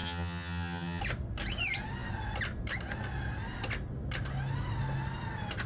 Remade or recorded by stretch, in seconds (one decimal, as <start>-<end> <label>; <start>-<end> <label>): 0.0-1.0 remade; 1.0-5.7 recorded